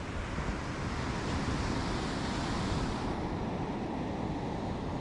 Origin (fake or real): real